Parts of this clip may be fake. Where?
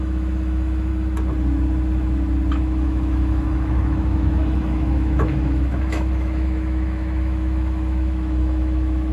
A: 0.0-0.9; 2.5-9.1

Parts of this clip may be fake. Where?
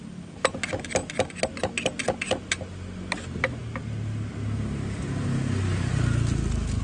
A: none